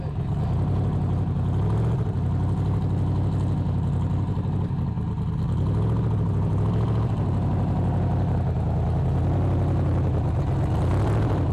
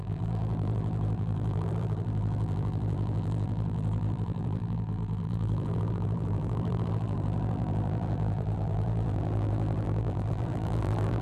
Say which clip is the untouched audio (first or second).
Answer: first